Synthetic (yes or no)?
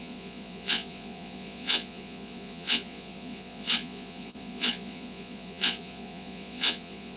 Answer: yes